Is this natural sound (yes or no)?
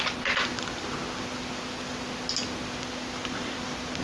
yes